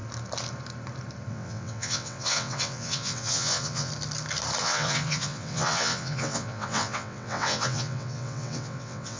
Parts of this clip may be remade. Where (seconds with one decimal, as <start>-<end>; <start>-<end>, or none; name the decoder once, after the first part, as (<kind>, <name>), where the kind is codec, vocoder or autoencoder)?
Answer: 1.3-3.9 (vocoder, WaveNeXt); 4.6-9.2